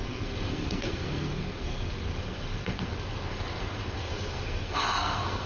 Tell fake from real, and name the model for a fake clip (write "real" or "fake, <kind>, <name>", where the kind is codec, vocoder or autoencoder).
fake, codec, SNAC